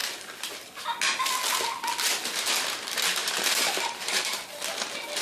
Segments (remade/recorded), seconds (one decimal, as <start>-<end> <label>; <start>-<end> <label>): 0.0-3.2 recorded; 3.2-4.4 remade; 4.4-5.2 recorded